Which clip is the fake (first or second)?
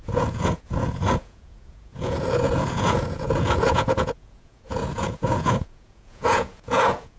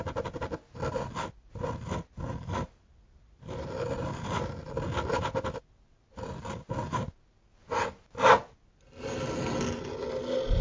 first